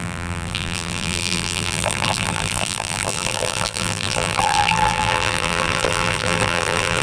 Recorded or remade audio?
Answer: remade